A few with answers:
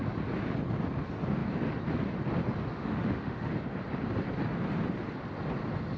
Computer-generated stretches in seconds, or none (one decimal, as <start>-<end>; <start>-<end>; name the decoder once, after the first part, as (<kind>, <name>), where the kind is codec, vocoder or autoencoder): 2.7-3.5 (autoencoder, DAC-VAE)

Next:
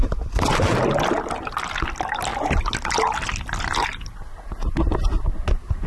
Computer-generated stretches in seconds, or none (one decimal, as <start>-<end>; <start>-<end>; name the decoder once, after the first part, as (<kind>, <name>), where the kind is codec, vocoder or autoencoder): none

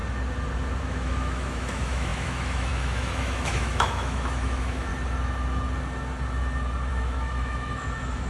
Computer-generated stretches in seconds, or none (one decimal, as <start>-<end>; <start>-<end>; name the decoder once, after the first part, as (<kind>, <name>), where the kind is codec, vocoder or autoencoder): 0.8-4.9 (autoencoder, DAC-VAE); 6.9-8.3